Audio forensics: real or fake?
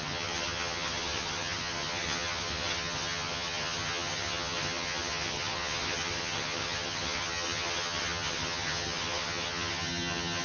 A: fake